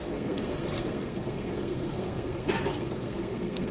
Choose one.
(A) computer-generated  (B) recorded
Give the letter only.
A